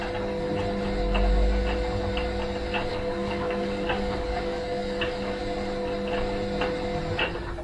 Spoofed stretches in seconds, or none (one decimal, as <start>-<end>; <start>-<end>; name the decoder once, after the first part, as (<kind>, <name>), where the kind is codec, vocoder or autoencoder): 2.9-5.4 (codec, DAC)